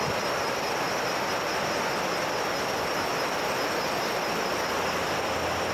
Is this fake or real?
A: real